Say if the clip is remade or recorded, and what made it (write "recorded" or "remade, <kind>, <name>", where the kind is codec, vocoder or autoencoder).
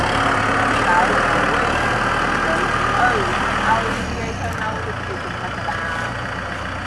recorded